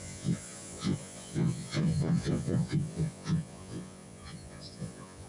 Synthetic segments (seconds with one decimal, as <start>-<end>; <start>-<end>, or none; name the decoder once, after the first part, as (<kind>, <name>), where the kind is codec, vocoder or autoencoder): 0.0-5.3 (vocoder, Vocos)